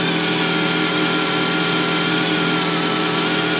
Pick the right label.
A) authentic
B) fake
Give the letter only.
A